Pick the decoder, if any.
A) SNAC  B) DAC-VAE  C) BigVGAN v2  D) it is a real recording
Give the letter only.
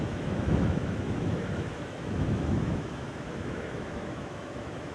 B